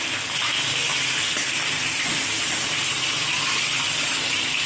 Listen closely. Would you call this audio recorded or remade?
recorded